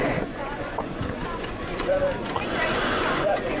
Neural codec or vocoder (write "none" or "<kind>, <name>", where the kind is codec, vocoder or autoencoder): vocoder, Vocos